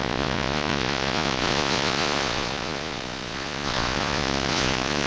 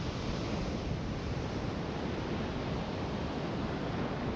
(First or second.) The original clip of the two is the second